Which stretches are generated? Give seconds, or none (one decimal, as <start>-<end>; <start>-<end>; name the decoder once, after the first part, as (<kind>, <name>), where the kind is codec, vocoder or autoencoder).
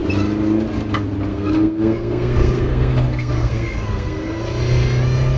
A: 1.3-4.4 (codec, SNAC)